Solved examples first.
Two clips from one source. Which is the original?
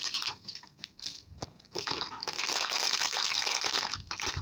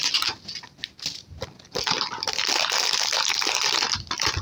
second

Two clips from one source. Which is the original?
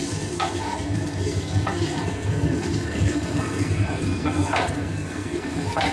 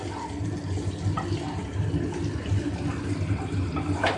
second